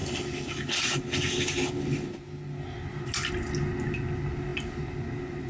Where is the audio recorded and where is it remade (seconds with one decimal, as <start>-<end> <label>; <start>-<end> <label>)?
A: 0.0-5.5 recorded